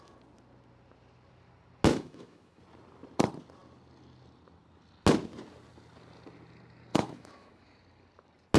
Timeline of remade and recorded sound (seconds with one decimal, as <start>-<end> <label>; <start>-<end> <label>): 0.0-1.9 recorded; 1.9-2.6 remade; 2.6-6.9 recorded; 6.9-7.8 remade; 7.8-8.6 recorded